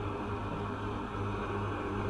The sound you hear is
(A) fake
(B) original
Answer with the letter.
B